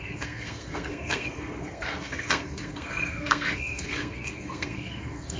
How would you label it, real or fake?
fake